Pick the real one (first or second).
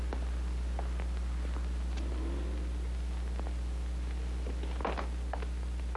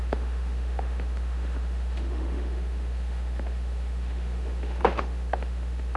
first